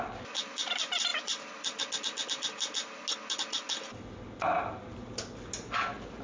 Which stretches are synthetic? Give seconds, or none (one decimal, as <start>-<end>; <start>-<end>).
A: none